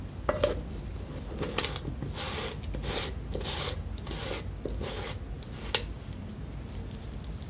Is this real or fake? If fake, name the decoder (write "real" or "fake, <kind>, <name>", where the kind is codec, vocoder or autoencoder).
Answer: real